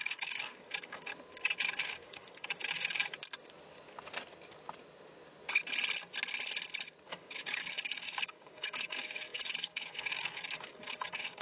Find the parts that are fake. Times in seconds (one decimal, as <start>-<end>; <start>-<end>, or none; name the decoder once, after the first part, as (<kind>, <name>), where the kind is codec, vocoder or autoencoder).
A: 0.0-1.1 (codec, DAC); 1.8-3.0; 7.1-11.4